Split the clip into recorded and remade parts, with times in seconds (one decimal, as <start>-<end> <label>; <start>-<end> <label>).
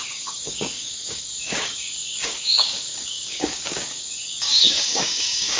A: 0.0-5.6 remade